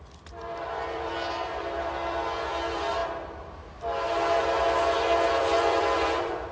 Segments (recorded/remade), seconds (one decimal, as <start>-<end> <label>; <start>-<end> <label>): 0.0-0.4 recorded; 0.4-1.1 remade; 1.1-5.4 recorded; 5.4-6.5 remade